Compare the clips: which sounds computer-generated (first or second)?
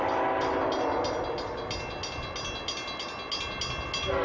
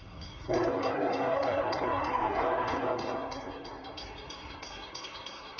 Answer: second